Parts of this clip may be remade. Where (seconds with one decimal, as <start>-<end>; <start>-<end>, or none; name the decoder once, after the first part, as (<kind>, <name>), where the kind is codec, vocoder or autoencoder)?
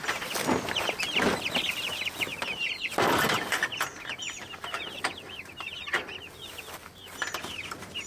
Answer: 2.3-5.0 (vocoder, BigVGAN v2); 7.0-8.1